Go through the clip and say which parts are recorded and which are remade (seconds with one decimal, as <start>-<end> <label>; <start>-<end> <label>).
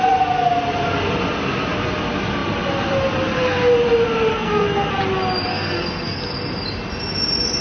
0.0-4.3 recorded; 4.3-4.9 remade; 4.9-5.5 recorded; 5.5-6.2 remade; 6.2-7.6 recorded